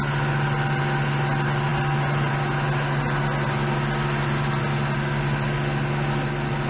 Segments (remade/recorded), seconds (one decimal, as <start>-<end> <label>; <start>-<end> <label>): 0.0-6.7 recorded